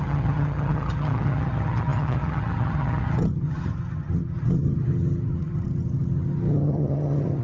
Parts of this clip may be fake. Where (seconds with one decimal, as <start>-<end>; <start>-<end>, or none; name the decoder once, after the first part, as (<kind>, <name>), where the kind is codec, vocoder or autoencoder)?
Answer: 0.0-7.4 (vocoder, HiFi-GAN)